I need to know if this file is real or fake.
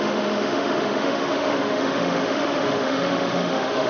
fake